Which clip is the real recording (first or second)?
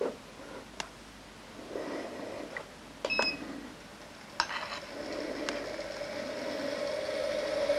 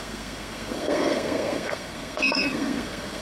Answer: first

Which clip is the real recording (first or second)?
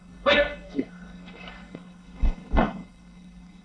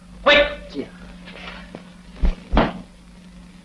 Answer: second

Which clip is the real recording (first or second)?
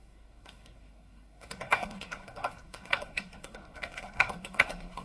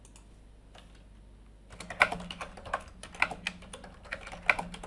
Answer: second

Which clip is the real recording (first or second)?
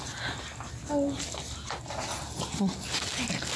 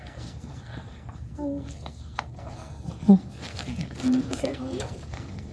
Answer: first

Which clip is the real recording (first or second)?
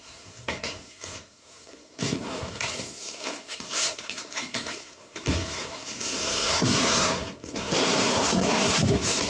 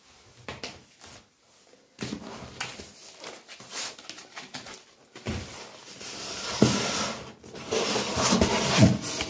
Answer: second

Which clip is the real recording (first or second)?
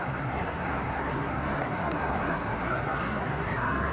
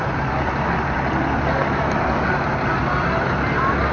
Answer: second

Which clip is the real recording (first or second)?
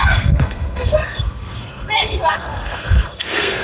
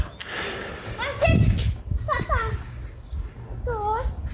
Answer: second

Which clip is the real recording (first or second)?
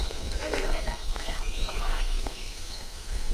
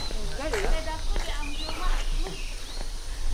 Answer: second